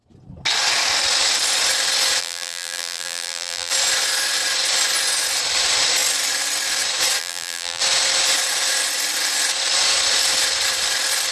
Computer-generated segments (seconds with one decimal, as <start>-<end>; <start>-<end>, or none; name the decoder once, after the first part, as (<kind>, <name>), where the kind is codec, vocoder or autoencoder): 2.2-3.7 (vocoder, BigVGAN v2); 7.2-7.8